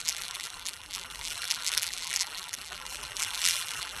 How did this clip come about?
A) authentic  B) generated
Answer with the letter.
B